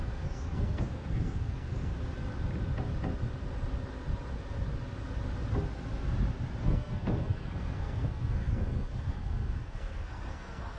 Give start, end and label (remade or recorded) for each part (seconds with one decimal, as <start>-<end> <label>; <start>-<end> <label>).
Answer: 0.0-1.9 remade; 1.9-6.6 recorded; 6.6-10.8 remade